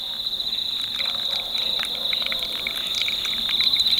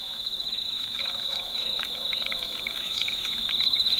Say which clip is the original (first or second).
first